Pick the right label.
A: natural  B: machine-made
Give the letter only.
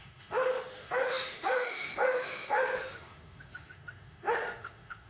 B